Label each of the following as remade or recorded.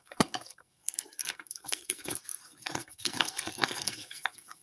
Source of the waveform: remade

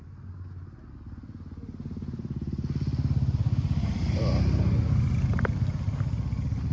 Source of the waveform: recorded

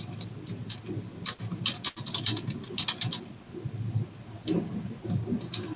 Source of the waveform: recorded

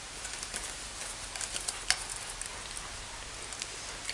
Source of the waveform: recorded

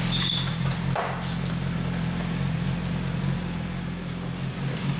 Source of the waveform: recorded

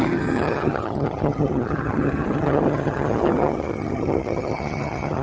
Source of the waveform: remade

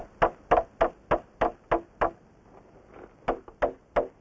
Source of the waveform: recorded